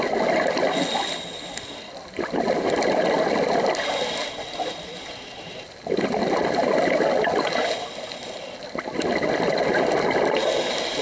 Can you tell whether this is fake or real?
real